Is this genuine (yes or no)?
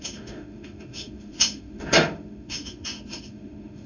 no